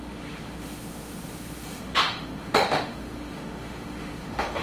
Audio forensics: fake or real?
fake